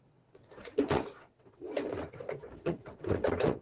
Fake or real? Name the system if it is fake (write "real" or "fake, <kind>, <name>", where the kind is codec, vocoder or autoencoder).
fake, vocoder, WaveNeXt